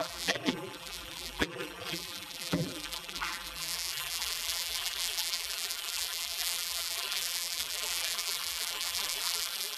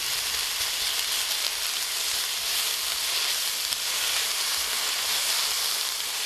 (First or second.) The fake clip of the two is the first